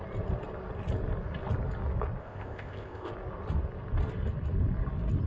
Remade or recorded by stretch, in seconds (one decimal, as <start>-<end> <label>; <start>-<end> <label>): 0.0-2.2 recorded; 2.2-3.1 remade; 3.1-5.3 recorded